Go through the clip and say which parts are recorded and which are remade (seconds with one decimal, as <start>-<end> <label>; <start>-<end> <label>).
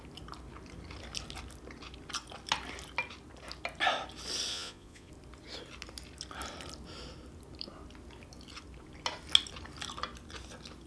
0.0-4.5 recorded; 4.5-5.1 remade; 5.1-10.9 recorded